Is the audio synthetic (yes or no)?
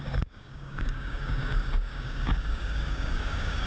yes